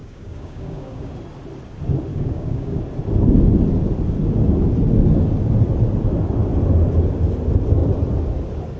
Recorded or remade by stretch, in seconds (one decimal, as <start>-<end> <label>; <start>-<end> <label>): 0.0-1.1 remade; 1.1-2.1 recorded; 2.1-2.8 remade; 2.8-8.8 recorded